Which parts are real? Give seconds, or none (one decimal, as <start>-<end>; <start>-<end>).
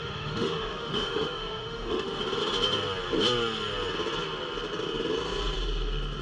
2.2-6.2